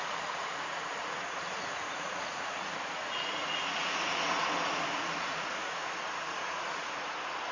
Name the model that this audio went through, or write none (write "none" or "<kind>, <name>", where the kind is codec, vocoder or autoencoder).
vocoder, Vocos